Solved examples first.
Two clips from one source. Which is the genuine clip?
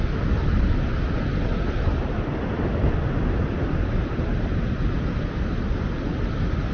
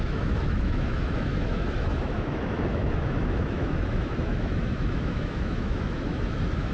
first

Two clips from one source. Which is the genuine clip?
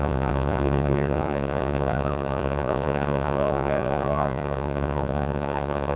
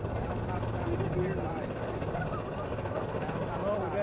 second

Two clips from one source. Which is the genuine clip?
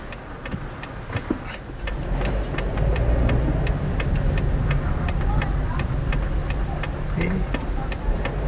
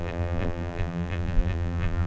first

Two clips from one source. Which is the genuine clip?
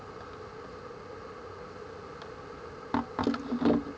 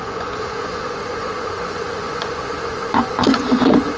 first